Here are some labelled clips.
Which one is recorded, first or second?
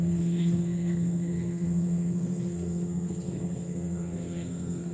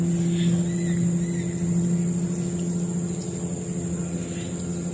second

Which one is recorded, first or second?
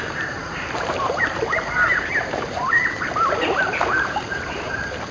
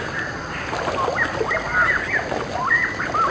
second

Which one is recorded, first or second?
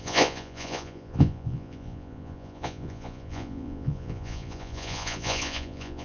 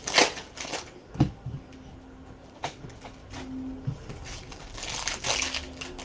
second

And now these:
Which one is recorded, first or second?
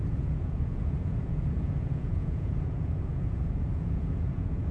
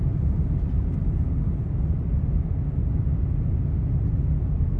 second